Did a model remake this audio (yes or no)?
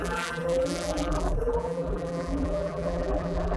yes